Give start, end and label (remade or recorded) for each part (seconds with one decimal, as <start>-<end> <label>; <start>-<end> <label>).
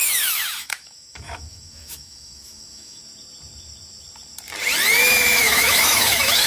0.0-3.0 remade; 3.0-5.0 recorded; 5.0-6.5 remade